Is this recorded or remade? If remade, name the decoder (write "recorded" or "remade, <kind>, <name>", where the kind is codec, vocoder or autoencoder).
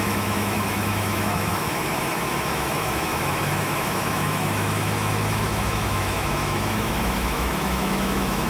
remade, autoencoder, DAC-VAE